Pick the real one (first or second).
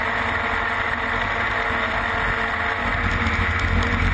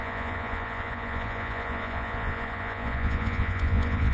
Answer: first